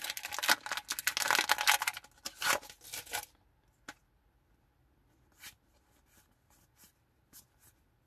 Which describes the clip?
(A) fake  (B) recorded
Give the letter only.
B